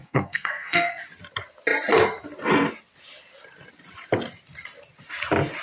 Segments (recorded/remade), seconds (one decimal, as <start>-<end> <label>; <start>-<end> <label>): 0.0-1.0 remade; 1.0-5.6 recorded